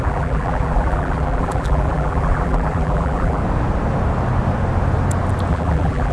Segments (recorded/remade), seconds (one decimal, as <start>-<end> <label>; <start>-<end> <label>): 0.0-3.4 remade; 3.4-5.5 recorded; 5.5-6.1 remade